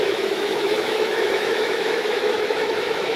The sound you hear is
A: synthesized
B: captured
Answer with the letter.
A